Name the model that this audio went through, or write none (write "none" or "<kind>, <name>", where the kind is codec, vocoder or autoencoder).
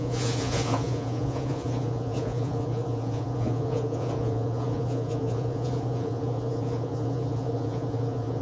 vocoder, Vocos